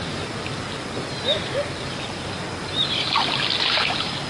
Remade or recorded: recorded